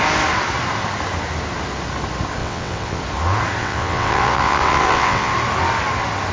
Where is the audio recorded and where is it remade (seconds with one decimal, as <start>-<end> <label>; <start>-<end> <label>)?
0.0-2.4 recorded; 2.4-3.0 remade; 3.0-3.6 recorded; 3.6-5.3 remade; 5.3-6.3 recorded